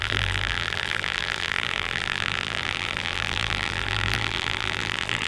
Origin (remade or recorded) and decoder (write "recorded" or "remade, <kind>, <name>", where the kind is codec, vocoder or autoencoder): remade, vocoder, BigVGAN v2